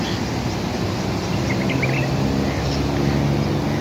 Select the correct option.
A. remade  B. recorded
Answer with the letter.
B